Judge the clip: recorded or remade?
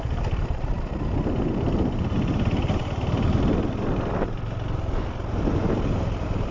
recorded